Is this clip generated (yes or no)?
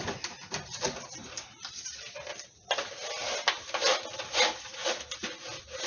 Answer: no